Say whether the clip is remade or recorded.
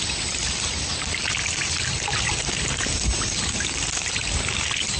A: recorded